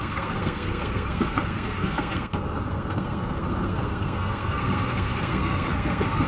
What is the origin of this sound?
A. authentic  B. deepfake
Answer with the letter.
B